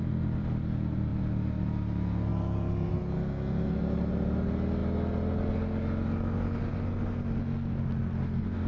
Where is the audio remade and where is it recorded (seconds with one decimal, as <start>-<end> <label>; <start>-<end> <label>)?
0.0-8.7 recorded